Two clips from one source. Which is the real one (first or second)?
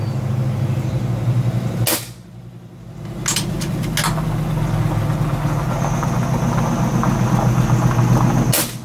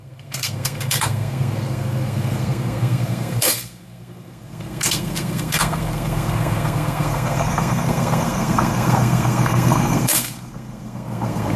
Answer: first